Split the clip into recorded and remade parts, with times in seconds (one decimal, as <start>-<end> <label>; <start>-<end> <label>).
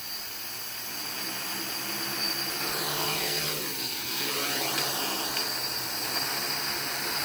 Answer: 0.0-2.9 recorded; 2.9-3.4 remade; 3.4-3.8 recorded; 3.8-4.3 remade; 4.3-7.2 recorded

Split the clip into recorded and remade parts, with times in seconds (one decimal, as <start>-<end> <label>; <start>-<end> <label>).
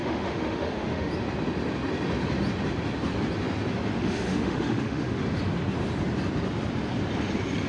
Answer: 0.0-1.1 remade; 1.1-4.0 recorded; 4.0-5.2 remade; 5.2-7.7 recorded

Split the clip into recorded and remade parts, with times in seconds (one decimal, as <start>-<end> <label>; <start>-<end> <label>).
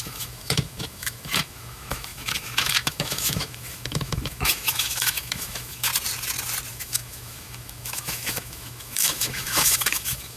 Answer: 0.0-5.9 remade; 5.9-6.7 recorded; 6.7-10.4 remade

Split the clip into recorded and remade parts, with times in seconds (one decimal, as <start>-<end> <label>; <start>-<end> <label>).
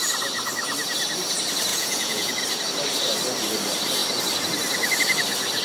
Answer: 0.0-1.7 recorded; 1.7-2.4 remade; 2.4-5.6 recorded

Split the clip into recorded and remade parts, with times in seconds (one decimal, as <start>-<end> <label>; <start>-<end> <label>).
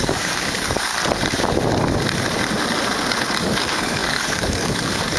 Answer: 0.0-0.9 remade; 0.9-3.4 recorded; 3.4-5.2 remade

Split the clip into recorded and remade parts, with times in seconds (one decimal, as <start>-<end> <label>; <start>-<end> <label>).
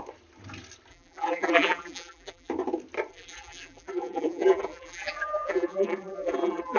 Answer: 0.0-0.9 recorded; 0.9-2.5 remade; 2.5-3.1 recorded; 3.1-6.8 remade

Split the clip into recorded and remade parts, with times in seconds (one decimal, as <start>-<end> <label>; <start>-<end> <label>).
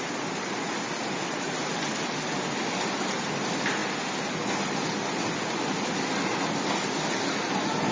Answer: 0.0-7.9 recorded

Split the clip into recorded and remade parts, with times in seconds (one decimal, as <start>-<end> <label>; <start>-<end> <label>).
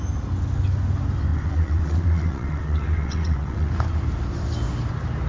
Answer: 0.0-1.3 recorded; 1.3-3.7 remade; 3.7-5.3 recorded